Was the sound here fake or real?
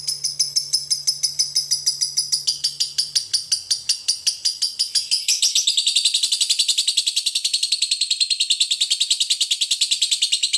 real